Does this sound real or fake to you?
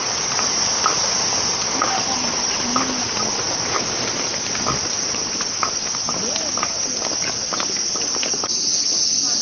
real